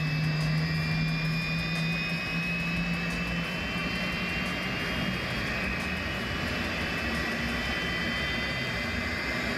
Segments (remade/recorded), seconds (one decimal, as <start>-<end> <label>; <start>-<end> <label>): 0.0-9.6 recorded